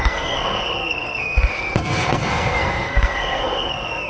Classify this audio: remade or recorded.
remade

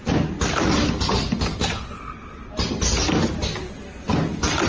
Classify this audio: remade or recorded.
recorded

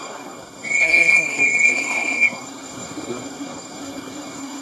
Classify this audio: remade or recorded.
remade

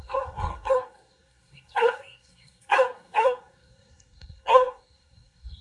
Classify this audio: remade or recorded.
remade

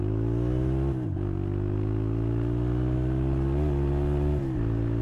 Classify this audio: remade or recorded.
recorded